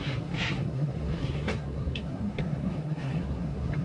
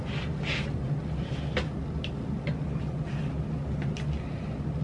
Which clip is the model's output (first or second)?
first